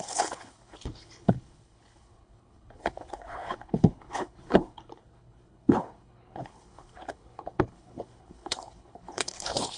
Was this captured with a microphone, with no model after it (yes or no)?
no